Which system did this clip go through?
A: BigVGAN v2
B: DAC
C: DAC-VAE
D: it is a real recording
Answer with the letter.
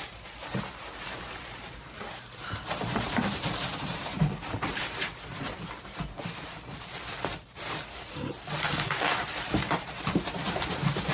A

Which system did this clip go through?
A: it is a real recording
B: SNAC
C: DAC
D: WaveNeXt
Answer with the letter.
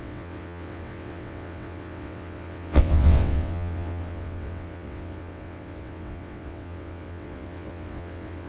D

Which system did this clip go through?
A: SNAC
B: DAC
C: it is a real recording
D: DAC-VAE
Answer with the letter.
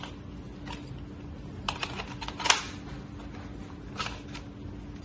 C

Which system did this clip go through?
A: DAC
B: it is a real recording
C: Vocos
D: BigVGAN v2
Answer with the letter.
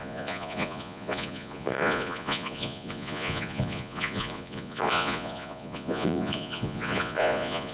C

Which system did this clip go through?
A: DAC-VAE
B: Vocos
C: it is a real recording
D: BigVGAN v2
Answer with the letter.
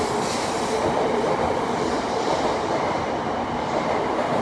D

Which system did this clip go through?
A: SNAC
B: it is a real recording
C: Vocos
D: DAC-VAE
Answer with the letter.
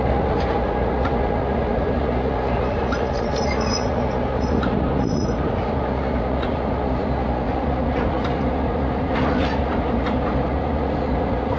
C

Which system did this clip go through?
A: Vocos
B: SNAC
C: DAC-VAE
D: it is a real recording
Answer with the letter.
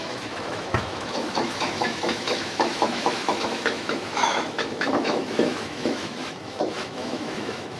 C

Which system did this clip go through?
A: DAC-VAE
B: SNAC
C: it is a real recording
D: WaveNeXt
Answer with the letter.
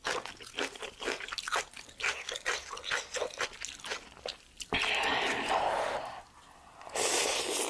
C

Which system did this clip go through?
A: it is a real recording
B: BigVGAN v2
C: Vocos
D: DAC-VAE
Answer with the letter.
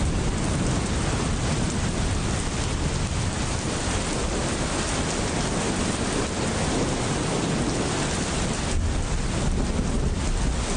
A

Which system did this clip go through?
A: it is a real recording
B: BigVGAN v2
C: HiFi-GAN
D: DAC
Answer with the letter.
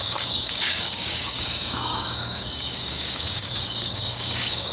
D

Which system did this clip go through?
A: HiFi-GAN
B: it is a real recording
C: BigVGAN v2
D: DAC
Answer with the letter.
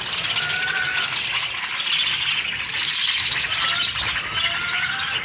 B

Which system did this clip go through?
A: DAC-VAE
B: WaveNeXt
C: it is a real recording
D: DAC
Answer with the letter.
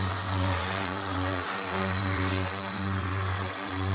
B